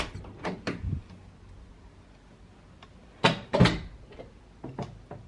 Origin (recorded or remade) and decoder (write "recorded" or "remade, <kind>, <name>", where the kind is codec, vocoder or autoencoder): recorded